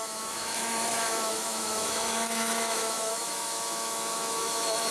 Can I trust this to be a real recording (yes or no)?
no